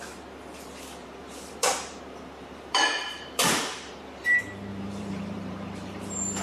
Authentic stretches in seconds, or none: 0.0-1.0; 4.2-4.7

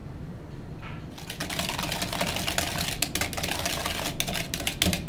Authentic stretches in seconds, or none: 0.7-5.1

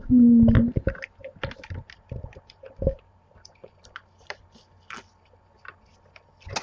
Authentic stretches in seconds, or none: 0.0-1.2; 4.4-6.6

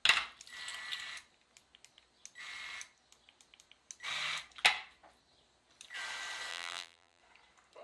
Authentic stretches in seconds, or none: 0.0-6.5; 7.2-7.8